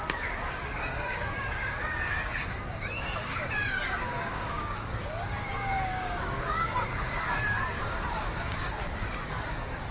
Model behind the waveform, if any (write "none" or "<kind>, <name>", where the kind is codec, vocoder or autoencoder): codec, DAC